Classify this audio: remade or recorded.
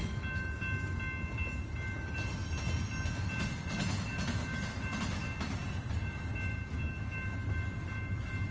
recorded